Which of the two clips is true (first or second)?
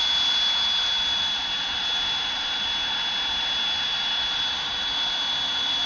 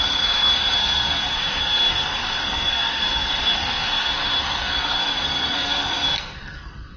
first